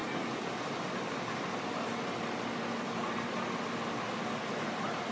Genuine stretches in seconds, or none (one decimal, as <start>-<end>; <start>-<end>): 0.0-5.1